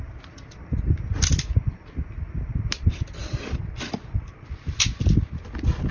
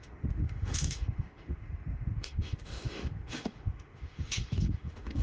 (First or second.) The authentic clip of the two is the first